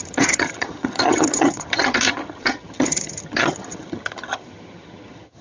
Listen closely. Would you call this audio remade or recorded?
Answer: remade